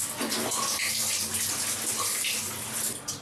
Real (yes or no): yes